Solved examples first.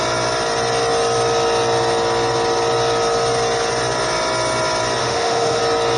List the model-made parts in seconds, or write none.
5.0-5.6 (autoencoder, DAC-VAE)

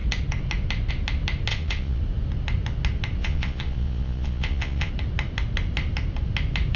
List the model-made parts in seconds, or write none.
1.5-2.0 (vocoder, Vocos); 3.2-4.9

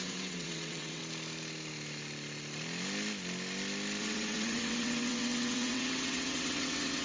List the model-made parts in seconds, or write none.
0.0-1.0 (vocoder, WaveNeXt); 4.0-7.0

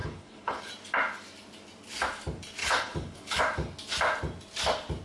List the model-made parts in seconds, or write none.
0.0-0.7 (codec, HILCodec); 2.6-3.4

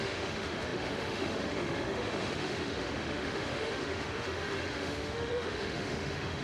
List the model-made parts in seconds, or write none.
0.0-6.4 (autoencoder, DAC-VAE)